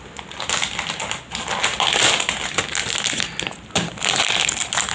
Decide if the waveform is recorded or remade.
recorded